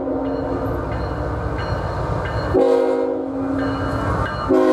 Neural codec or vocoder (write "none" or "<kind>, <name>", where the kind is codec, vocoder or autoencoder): none